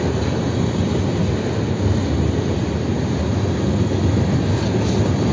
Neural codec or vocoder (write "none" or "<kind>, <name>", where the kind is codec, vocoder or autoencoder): none